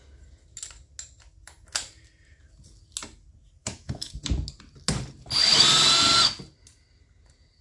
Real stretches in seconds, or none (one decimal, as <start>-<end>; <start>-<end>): 0.0-3.6; 4.1-7.6